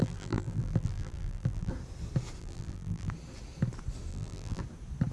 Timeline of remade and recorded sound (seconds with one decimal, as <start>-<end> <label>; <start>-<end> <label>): 0.0-1.7 remade; 1.7-2.4 recorded; 2.4-3.1 remade; 3.1-4.1 recorded; 4.1-4.6 remade; 4.6-5.1 recorded